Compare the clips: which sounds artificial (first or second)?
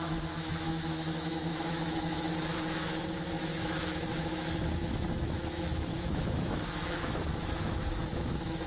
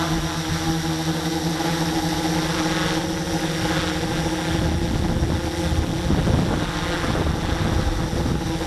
first